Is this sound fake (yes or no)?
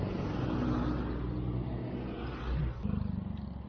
no